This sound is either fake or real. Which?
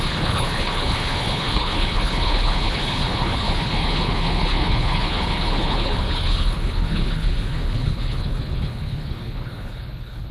fake